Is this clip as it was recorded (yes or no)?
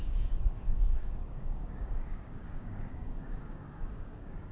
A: no